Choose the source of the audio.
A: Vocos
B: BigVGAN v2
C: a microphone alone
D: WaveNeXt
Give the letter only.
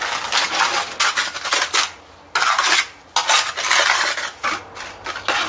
C